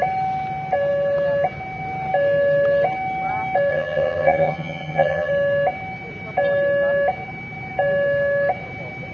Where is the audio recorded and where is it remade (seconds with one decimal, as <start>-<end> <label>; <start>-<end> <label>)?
0.0-3.7 recorded; 3.7-5.3 remade; 5.3-9.1 recorded

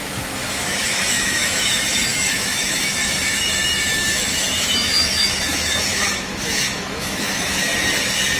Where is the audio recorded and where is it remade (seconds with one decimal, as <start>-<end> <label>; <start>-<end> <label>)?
0.0-7.7 remade; 7.7-8.4 recorded

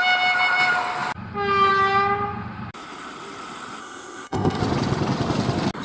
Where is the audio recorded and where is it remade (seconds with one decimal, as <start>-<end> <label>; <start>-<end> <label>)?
0.0-3.8 recorded; 3.8-4.6 remade; 4.6-5.8 recorded